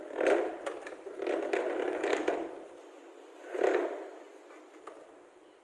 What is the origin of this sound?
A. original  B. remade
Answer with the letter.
A